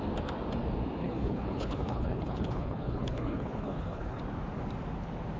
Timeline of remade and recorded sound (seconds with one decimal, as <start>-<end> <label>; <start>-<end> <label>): 0.0-1.0 recorded; 1.0-4.2 remade; 4.2-5.4 recorded